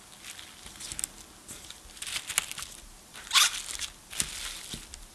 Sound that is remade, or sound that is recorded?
recorded